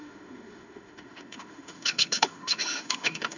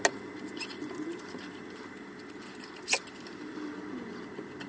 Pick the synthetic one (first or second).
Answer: first